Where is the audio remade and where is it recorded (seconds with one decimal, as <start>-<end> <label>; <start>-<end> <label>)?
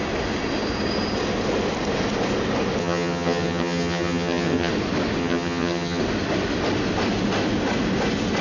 0.0-2.8 recorded; 2.8-4.7 remade; 4.7-5.2 recorded; 5.2-6.0 remade; 6.0-8.4 recorded